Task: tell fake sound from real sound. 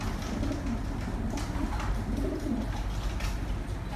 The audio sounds real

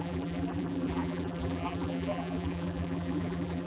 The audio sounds fake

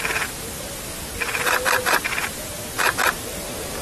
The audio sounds fake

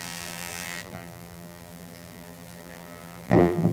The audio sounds fake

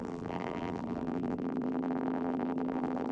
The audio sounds fake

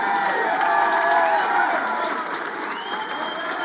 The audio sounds fake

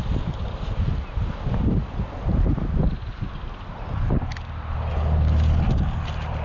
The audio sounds real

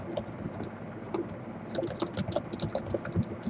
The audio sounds real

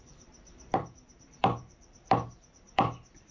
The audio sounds fake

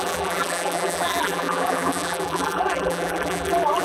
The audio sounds fake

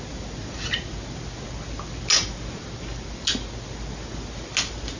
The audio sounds real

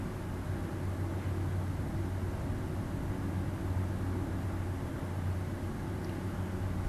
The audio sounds real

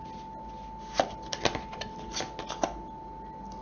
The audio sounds real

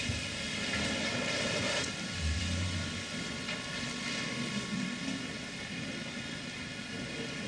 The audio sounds real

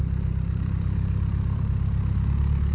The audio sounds fake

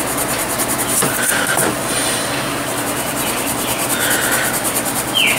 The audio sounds real